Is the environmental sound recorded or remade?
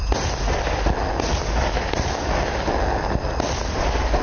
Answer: recorded